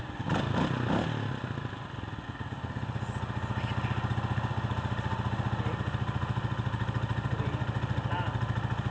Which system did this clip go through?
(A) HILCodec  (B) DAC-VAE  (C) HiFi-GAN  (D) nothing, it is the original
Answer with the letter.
D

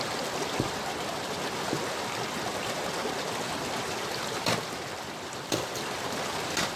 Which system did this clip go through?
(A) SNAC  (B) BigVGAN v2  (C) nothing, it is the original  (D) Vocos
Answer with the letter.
C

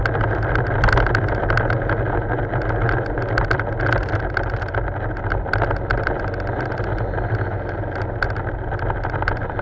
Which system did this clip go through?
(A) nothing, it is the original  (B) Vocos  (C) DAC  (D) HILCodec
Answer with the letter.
A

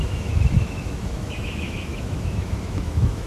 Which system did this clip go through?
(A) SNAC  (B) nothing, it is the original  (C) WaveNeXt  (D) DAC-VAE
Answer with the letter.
D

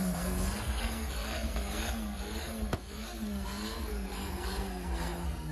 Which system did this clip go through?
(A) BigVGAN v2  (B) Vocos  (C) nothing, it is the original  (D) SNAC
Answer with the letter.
D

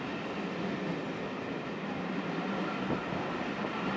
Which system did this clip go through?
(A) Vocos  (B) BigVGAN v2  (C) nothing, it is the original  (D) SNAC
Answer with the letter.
C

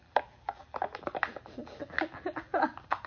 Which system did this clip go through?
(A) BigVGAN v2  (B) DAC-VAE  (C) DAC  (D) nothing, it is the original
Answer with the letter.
A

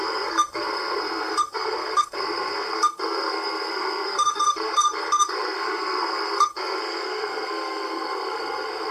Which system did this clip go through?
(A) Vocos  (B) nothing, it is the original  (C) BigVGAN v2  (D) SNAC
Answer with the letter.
D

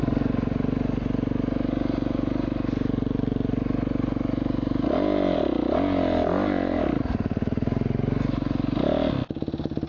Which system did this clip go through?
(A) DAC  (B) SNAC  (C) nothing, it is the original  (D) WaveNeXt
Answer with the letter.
C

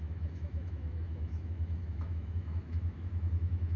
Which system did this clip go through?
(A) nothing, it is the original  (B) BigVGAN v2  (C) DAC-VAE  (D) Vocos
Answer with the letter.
C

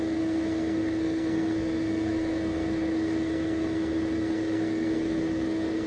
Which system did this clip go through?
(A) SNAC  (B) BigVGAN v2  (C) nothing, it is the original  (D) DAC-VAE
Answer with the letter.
A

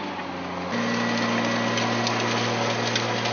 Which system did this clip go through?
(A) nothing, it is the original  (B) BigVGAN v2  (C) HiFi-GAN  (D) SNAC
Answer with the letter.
A